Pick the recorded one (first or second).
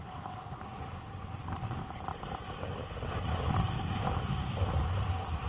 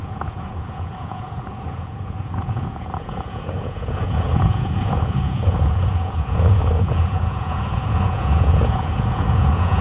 first